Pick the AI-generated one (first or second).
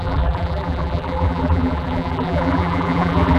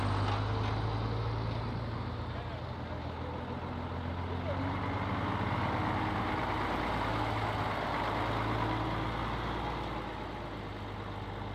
first